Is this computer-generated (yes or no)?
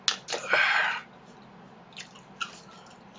no